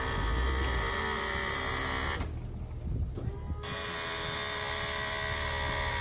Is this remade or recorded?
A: recorded